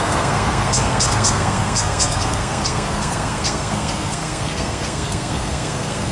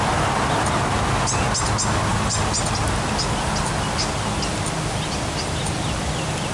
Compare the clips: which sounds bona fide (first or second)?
second